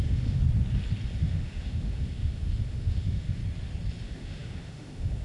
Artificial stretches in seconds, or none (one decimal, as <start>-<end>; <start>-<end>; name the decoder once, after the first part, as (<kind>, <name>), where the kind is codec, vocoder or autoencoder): 0.0-0.4 (autoencoder, DAC-VAE); 1.2-3.4; 4.0-5.2